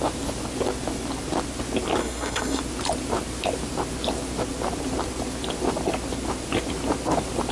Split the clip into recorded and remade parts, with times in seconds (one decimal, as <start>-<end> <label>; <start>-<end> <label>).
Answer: 0.0-2.0 recorded; 2.0-2.6 remade; 2.6-7.5 recorded